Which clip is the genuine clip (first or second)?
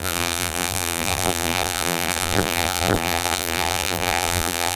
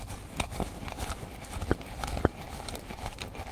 second